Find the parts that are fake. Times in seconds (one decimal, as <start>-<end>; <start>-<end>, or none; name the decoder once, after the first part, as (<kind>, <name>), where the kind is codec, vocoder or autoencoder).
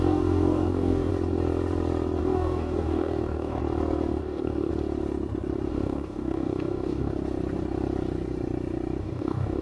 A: 0.0-1.1 (codec, DAC); 2.2-3.6; 4.2-4.7; 5.7-7.1; 9.0-9.6